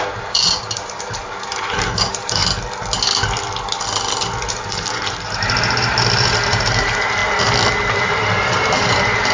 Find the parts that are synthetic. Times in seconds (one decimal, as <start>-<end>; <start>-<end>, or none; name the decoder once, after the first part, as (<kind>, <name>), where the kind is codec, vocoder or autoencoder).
0.0-2.4 (vocoder, BigVGAN v2); 4.5-7.2; 8.0-9.3